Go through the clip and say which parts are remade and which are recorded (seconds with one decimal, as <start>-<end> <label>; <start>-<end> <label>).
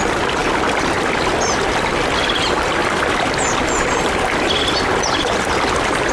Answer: 0.0-6.1 recorded